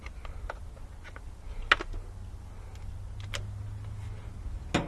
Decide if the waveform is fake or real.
real